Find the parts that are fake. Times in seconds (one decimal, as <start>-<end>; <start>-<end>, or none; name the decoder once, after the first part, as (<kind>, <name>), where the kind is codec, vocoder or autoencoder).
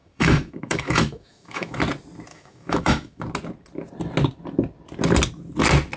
0.0-1.8 (autoencoder, DAC-VAE); 2.3-3.2